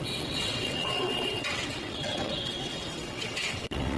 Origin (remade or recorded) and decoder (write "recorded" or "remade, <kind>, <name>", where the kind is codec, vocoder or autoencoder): remade, vocoder, WaveNeXt